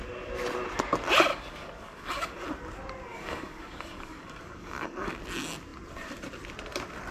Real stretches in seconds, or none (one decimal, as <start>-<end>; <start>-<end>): 0.0-1.3; 2.5-3.1; 5.2-7.1